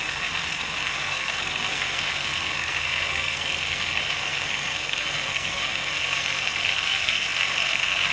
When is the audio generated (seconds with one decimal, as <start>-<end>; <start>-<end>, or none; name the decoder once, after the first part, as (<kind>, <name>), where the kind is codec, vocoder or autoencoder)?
0.0-8.1 (codec, SNAC)